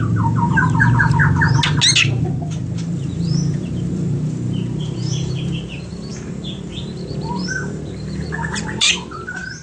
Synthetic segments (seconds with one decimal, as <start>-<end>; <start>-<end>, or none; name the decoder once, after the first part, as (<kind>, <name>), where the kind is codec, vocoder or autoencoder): 0.0-1.2 (vocoder, BigVGAN v2); 2.0-9.6